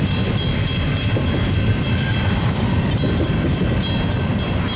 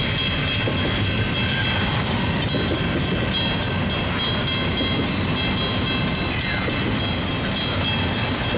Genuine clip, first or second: second